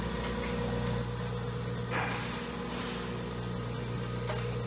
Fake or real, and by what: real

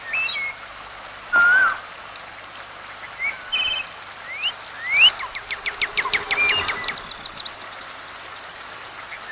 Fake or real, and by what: real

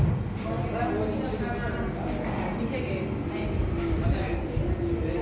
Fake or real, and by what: real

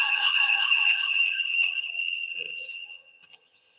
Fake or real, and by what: fake, vocoder, HiFi-GAN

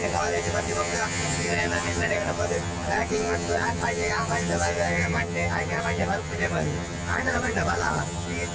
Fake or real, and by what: fake, vocoder, HiFi-GAN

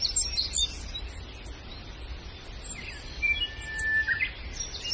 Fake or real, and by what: real